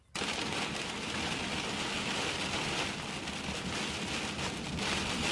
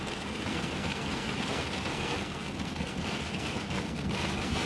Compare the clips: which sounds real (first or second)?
first